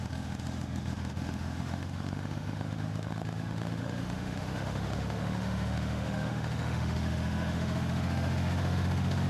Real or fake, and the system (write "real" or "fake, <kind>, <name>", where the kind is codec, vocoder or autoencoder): fake, autoencoder, DAC-VAE